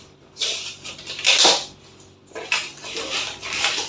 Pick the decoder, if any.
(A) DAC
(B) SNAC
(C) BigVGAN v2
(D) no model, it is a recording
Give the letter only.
D